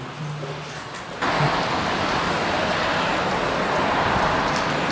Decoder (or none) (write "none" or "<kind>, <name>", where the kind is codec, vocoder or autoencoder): none